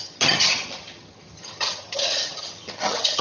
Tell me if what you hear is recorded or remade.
remade